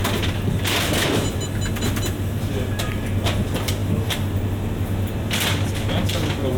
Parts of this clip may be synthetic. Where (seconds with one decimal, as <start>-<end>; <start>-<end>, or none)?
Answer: none